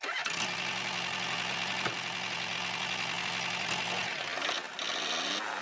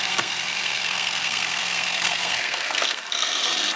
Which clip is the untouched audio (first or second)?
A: first